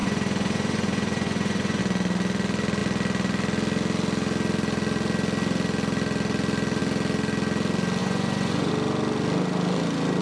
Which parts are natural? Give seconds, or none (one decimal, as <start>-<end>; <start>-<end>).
1.8-8.0; 8.7-10.2